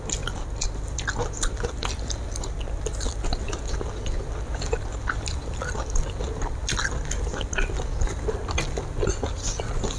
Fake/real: real